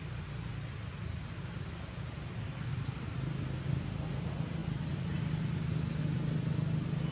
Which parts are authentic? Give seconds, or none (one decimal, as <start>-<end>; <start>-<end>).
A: 0.0-7.1